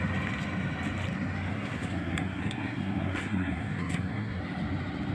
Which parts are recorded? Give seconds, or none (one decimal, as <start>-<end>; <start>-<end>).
0.0-1.5; 4.4-5.1